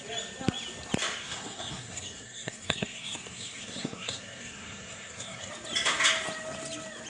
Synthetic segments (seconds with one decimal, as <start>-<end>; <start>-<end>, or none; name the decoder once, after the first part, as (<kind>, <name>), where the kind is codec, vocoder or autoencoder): 1.2-5.5 (codec, SNAC)